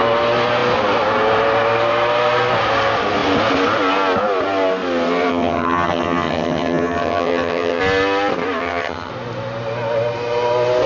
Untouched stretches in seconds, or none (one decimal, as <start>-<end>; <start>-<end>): 0.0-5.3; 7.8-8.6; 9.1-10.9